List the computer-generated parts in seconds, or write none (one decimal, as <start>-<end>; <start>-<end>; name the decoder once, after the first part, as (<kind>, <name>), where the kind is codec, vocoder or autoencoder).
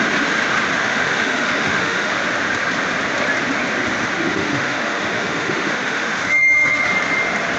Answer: 0.8-2.2 (autoencoder, DAC-VAE); 4.3-6.9